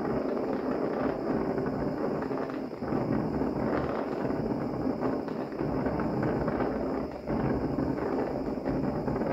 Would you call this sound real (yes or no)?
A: yes